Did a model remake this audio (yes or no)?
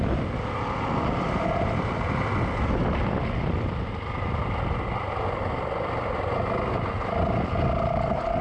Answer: no